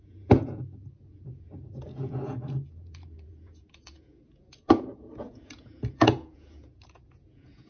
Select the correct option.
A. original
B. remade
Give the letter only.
B